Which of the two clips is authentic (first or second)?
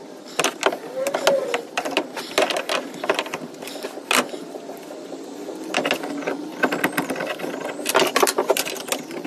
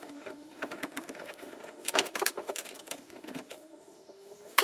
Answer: first